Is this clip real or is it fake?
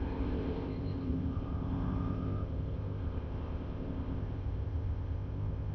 fake